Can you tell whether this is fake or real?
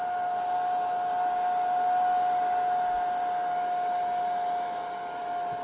real